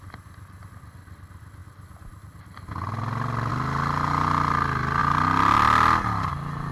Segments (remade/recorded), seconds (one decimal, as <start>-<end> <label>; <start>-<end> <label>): 0.0-6.7 recorded